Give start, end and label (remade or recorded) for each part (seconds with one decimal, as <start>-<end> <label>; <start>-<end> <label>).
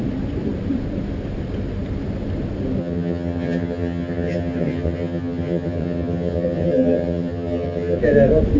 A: 0.0-2.8 recorded; 2.8-8.0 remade; 8.0-8.6 recorded